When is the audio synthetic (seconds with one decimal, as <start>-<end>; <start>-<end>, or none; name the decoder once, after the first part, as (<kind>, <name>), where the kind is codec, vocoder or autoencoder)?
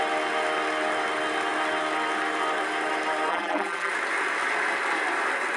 3.3-3.9 (vocoder, BigVGAN v2)